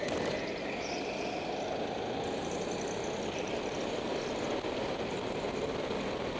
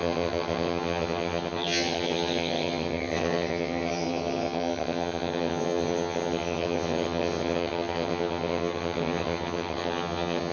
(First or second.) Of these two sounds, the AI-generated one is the second